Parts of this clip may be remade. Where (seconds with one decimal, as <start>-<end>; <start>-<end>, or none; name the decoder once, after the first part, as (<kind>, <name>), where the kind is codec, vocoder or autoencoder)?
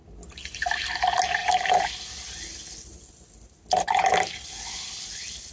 none